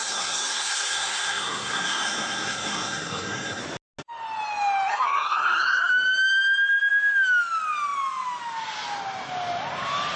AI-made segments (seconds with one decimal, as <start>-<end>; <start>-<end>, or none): 0.0-3.6; 4.9-5.9